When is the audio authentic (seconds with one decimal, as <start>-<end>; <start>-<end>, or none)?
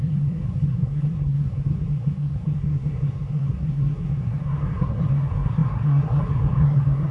none